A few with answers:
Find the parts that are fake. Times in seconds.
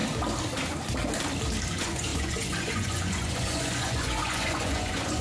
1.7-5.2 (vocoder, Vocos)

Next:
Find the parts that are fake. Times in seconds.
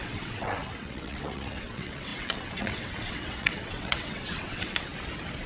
0.0-4.9 (vocoder, WaveNeXt)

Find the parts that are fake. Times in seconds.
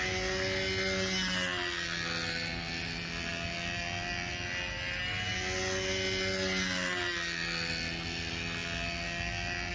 none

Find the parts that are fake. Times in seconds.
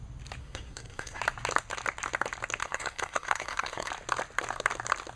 0.4-1.2 (codec, SNAC); 2.6-3.9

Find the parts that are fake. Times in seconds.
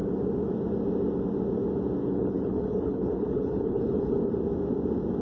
2.0-4.3 (codec, HILCodec)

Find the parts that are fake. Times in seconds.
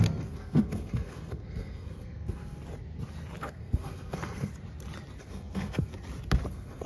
0.0-2.6 (codec, SNAC); 3.4-4.5; 5.2-5.9; 6.5-6.9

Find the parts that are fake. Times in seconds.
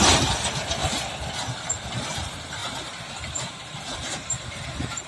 0.0-0.8 (vocoder, BigVGAN v2); 1.3-2.6; 3.5-5.1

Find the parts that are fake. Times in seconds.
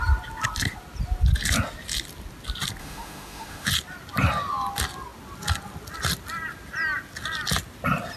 2.8-3.7 (autoencoder, DAC-VAE)